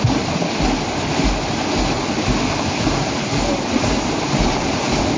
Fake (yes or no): no